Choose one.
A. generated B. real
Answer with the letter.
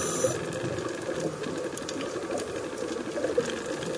B